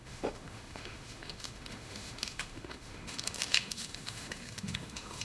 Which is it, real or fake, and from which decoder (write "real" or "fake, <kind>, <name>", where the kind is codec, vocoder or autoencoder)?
fake, autoencoder, DAC-VAE